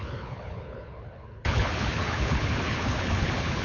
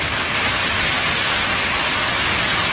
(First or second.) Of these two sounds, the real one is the second